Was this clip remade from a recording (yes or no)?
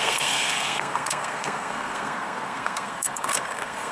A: yes